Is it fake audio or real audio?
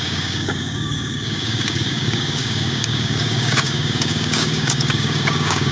fake